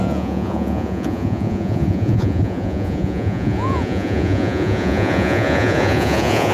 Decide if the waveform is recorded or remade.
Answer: remade